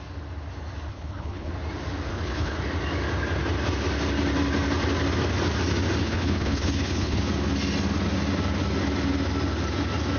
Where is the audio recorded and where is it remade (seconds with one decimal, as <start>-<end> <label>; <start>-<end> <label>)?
0.0-0.9 recorded; 0.9-1.5 remade; 1.5-2.1 recorded; 2.1-2.6 remade; 2.6-6.0 recorded; 6.0-7.2 remade; 7.2-10.2 recorded